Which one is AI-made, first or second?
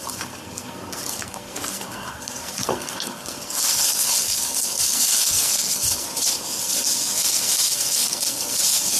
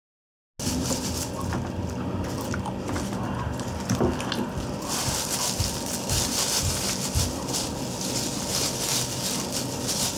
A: first